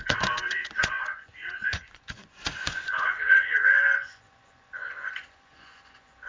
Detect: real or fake fake